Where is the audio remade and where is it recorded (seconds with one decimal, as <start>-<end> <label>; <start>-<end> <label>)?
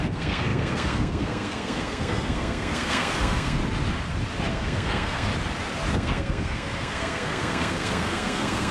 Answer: 0.0-3.6 remade; 3.6-4.5 recorded; 4.5-5.3 remade; 5.3-5.9 recorded; 5.9-8.7 remade